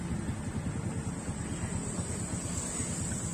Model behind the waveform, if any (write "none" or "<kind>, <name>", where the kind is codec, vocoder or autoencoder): none